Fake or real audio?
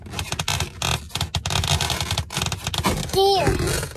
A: real